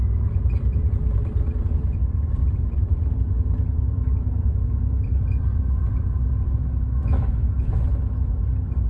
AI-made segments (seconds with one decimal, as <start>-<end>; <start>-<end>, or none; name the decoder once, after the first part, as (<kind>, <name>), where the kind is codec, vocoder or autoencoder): 0.0-6.2 (vocoder, BigVGAN v2); 8.1-8.9